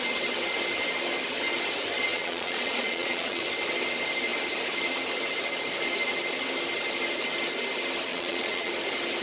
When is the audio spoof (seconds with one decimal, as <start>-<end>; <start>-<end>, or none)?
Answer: 2.1-3.5; 8.1-8.7